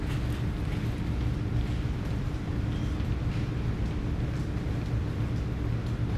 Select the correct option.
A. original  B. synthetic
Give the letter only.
A